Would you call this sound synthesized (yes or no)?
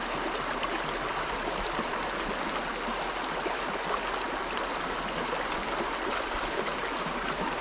no